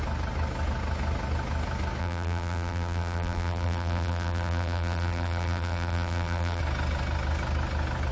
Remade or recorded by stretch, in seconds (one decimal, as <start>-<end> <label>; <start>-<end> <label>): 0.0-2.0 recorded; 2.0-6.6 remade; 6.6-8.1 recorded